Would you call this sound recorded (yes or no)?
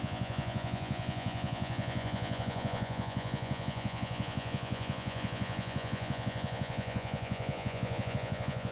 no